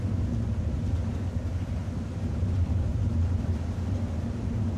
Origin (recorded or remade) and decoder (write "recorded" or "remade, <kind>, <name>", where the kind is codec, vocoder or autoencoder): recorded